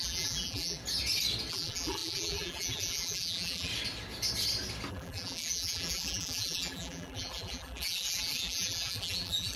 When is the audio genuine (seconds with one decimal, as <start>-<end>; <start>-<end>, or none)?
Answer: 0.8-1.5; 3.7-4.9